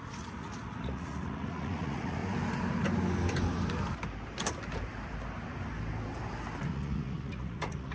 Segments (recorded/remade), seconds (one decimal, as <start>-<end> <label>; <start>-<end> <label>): 0.0-2.2 remade; 2.2-6.7 recorded; 6.7-7.9 remade